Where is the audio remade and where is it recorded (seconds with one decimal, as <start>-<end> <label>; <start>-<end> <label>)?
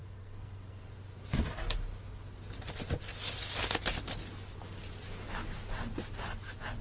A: 0.0-0.9 remade; 0.9-6.8 recorded